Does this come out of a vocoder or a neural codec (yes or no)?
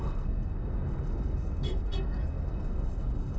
yes